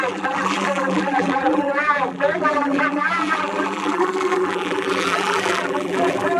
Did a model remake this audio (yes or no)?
yes